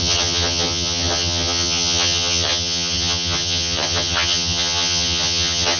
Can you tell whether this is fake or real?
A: fake